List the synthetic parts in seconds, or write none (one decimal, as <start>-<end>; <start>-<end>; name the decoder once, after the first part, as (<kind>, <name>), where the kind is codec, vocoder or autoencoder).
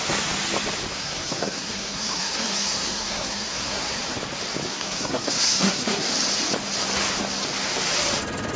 0.9-4.0 (codec, SNAC); 4.7-6.1